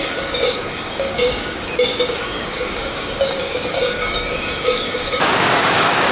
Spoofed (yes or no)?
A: yes